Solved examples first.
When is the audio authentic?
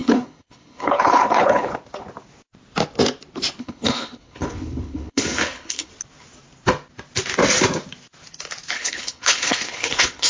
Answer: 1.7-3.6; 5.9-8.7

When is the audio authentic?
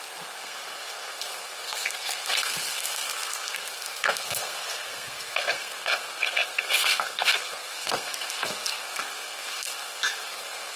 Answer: none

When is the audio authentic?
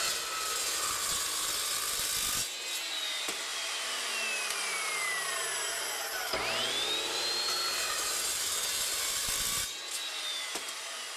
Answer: 0.0-3.5; 4.1-11.2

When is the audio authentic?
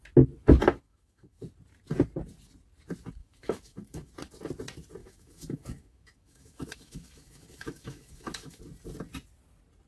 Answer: 0.0-0.7; 1.4-3.2; 4.1-5.0; 8.6-9.9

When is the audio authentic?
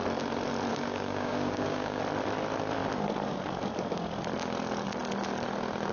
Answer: 0.0-0.7; 2.0-5.9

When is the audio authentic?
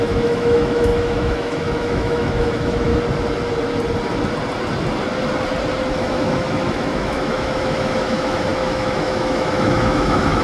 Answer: 2.9-5.9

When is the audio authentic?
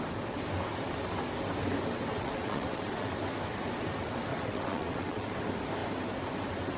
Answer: 0.0-2.1; 3.2-4.3; 5.3-6.8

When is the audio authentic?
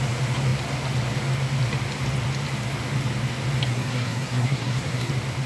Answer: 0.0-3.7; 5.1-5.5